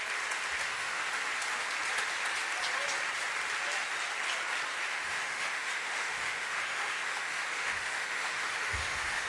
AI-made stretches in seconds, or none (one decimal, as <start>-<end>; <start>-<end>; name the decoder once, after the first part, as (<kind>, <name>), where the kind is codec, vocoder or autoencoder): 0.6-1.1 (autoencoder, DAC-VAE); 4.9-9.3